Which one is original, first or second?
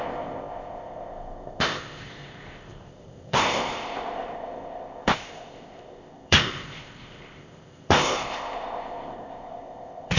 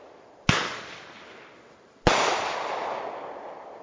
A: second